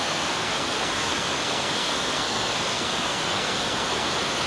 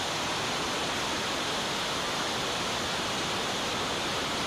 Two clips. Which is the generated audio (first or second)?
first